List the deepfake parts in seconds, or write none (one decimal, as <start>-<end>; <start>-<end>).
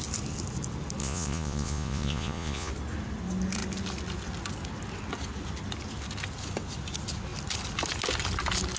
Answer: 1.0-2.7